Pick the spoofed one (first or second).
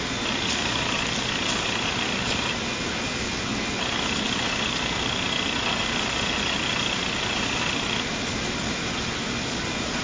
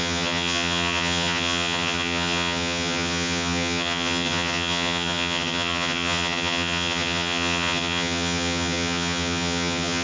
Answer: second